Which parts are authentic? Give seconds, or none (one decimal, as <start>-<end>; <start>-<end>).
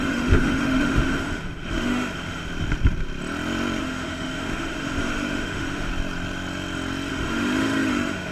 2.5-3.8; 5.9-7.1